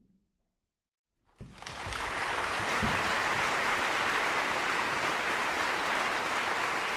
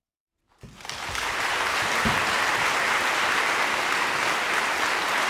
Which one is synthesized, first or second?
first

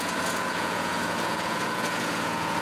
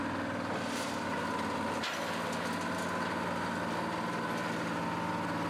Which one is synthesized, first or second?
first